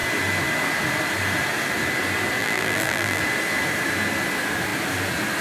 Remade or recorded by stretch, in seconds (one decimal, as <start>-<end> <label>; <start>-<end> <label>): 0.0-2.4 recorded; 2.4-3.2 remade; 3.2-5.4 recorded

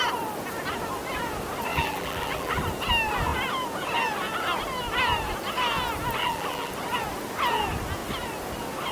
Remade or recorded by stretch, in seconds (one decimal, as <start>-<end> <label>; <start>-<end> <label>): 0.0-1.7 recorded; 1.7-2.6 remade; 2.6-6.2 recorded; 6.2-6.7 remade; 6.7-8.9 recorded

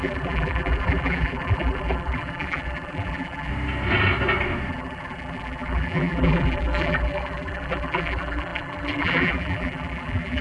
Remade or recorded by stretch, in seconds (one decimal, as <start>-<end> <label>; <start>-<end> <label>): 0.0-3.5 remade; 3.5-4.7 recorded; 4.7-10.4 remade

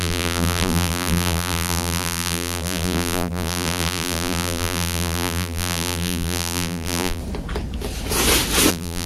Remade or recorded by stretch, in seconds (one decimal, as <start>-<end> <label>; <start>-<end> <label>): 0.0-7.2 remade; 7.2-8.7 recorded; 8.7-9.1 remade